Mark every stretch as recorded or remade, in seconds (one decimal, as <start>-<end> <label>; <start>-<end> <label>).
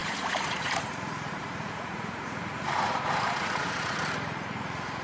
0.0-5.0 remade